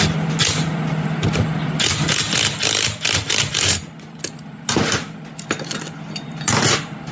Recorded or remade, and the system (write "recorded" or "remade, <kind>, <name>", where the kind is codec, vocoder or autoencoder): recorded